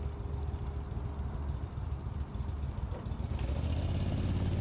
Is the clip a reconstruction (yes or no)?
no